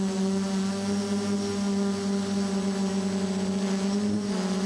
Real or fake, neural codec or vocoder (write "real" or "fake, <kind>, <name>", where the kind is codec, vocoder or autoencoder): real